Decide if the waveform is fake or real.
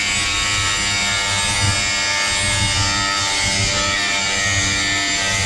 real